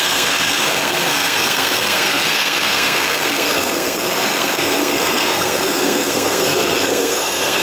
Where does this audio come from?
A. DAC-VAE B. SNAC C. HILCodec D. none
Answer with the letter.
B